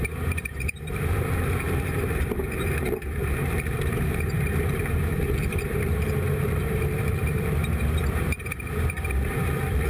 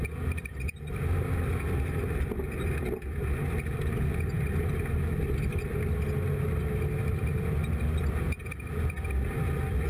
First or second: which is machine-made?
first